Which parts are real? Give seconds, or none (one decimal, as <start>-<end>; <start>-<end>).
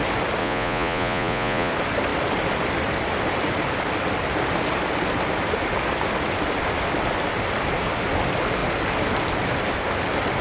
0.0-0.4; 1.7-10.4